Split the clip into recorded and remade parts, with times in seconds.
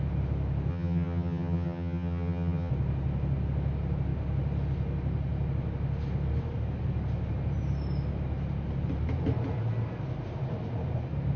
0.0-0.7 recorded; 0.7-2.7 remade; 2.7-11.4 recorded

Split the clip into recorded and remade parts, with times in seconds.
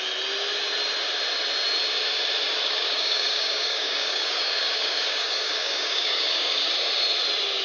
0.0-2.6 recorded; 2.6-6.7 remade; 6.7-7.6 recorded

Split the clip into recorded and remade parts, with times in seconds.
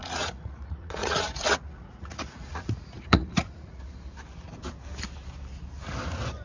0.0-3.8 remade; 3.8-6.4 recorded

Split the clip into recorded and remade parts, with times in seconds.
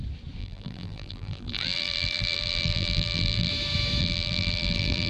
0.0-0.4 recorded; 0.4-3.5 remade; 3.5-4.0 recorded; 4.0-5.1 remade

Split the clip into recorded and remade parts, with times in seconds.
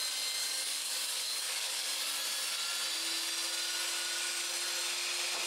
0.0-0.4 recorded; 0.4-2.1 remade; 2.1-5.5 recorded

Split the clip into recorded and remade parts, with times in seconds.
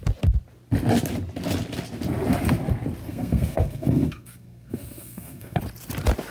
0.0-3.0 recorded; 3.0-5.6 remade; 5.6-6.3 recorded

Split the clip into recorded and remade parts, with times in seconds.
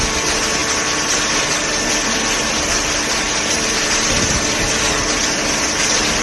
0.0-6.2 recorded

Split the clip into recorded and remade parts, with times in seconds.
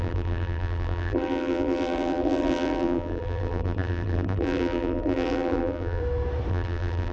0.0-6.0 remade; 6.0-6.5 recorded; 6.5-7.1 remade